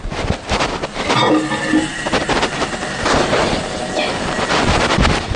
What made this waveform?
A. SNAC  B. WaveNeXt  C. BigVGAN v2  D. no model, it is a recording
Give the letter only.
D